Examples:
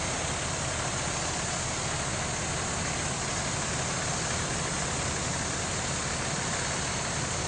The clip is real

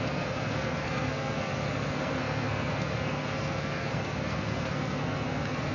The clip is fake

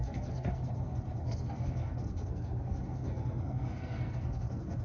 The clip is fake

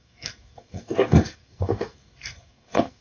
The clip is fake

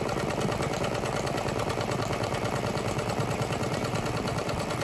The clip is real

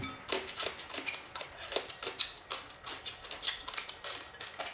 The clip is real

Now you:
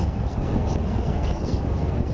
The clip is fake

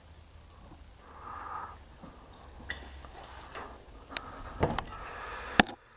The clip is real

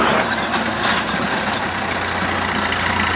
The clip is real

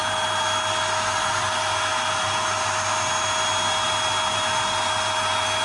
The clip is real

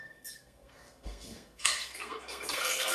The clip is fake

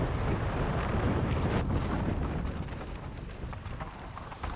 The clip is real